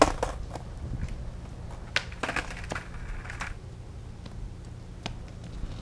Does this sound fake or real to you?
real